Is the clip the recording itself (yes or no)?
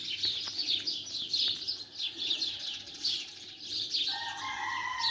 yes